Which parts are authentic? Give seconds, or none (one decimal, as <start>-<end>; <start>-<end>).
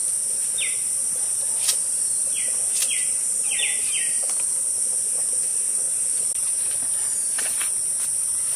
0.0-1.0; 3.8-5.5; 6.6-8.6